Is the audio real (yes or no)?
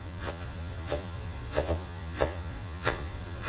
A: no